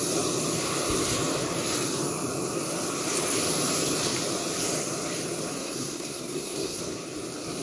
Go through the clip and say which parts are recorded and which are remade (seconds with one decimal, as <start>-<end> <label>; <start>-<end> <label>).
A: 0.0-5.5 recorded; 5.5-6.8 remade; 6.8-7.6 recorded